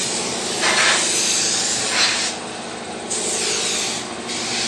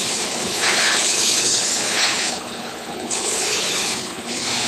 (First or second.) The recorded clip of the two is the first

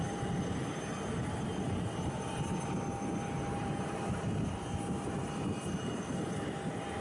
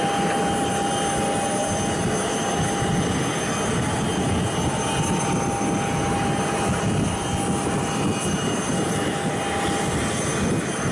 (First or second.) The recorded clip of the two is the second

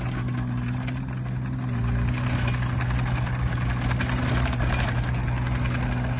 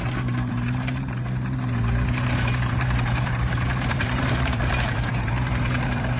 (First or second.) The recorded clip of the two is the first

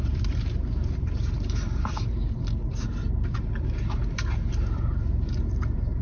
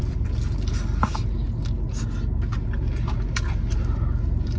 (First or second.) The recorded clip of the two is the second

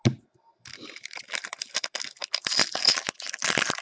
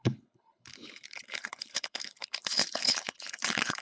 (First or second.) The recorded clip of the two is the first